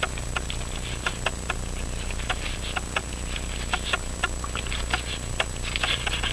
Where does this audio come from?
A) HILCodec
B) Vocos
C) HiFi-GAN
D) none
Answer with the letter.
D